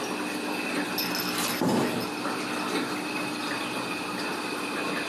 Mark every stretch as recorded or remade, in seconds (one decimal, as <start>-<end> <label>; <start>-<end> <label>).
0.0-5.1 recorded